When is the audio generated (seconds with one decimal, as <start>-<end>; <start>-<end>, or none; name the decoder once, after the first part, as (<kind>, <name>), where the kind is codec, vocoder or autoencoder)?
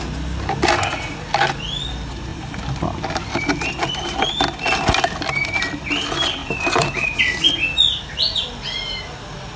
2.3-4.3 (vocoder, BigVGAN v2); 6.4-7.2